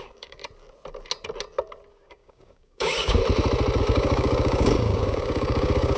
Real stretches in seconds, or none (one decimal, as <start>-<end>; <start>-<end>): 0.4-1.9; 3.2-3.8